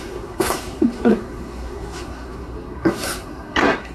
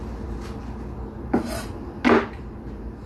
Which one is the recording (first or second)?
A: second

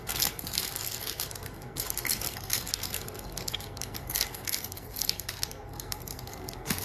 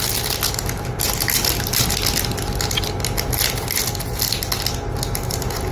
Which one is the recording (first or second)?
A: second